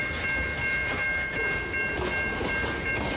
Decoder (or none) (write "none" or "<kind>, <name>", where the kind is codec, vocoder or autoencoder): none